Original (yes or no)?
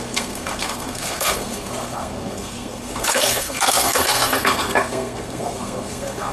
no